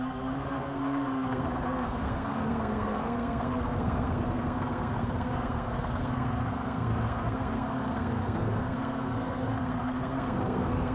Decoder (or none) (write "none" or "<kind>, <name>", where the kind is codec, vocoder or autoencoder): codec, SNAC